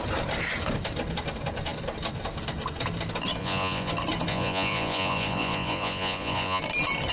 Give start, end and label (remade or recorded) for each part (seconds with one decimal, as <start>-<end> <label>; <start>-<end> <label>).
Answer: 0.0-3.4 recorded; 3.4-3.9 remade; 3.9-4.3 recorded; 4.3-6.6 remade; 6.6-7.1 recorded